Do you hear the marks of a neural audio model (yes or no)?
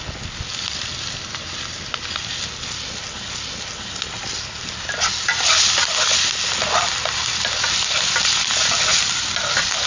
no